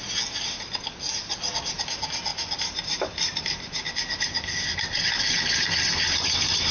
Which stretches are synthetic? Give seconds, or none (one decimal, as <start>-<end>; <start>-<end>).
none